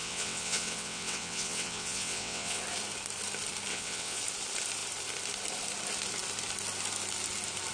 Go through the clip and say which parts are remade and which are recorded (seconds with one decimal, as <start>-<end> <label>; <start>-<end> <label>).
0.0-2.6 remade; 2.6-3.7 recorded; 3.7-4.2 remade; 4.2-7.7 recorded

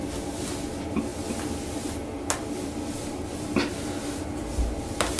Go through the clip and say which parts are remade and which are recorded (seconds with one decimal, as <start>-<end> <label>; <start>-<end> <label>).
0.0-5.2 recorded

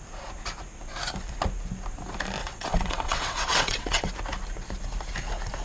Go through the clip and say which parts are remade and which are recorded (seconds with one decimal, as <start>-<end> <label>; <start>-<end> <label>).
0.0-2.4 recorded; 2.4-4.1 remade; 4.1-5.6 recorded

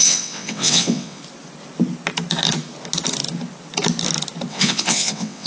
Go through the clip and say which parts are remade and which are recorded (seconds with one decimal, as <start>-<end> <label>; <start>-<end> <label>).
0.0-1.2 remade; 1.2-4.5 recorded; 4.5-5.5 remade

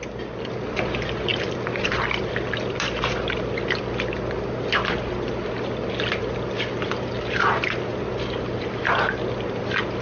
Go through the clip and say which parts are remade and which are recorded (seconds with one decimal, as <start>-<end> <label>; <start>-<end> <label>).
0.0-10.0 recorded